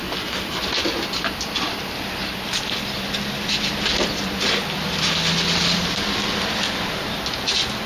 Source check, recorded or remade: recorded